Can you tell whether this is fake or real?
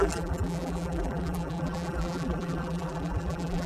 fake